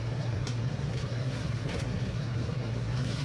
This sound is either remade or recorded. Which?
remade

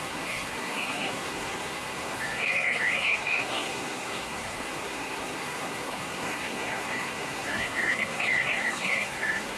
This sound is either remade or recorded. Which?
remade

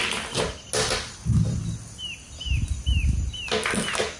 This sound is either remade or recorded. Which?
recorded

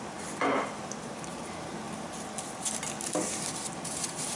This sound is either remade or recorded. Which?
recorded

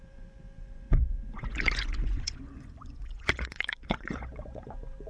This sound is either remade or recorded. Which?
remade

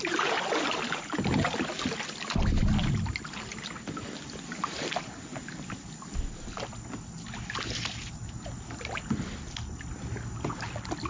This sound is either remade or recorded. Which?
recorded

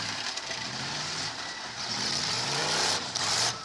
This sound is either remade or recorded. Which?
remade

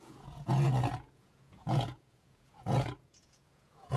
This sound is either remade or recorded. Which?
remade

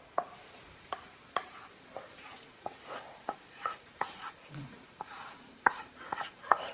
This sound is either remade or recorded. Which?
remade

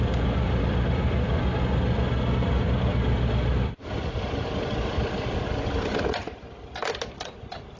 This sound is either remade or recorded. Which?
recorded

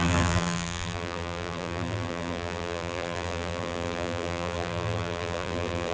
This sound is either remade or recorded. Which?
remade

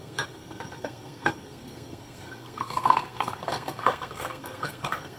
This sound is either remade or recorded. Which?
remade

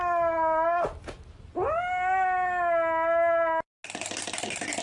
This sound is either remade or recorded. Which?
recorded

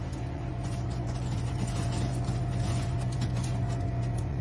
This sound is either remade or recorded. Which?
remade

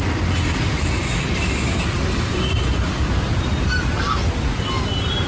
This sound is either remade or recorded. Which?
remade